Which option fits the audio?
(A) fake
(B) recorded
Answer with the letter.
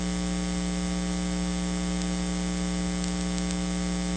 B